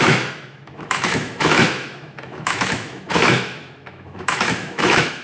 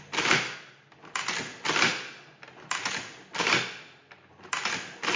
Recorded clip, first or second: second